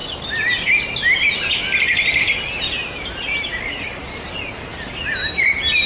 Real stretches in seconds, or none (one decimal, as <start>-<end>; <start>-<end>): 0.0-5.9